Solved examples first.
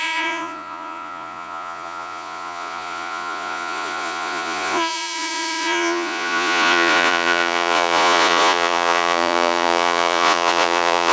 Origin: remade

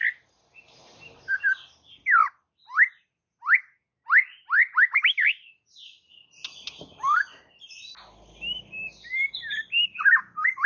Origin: recorded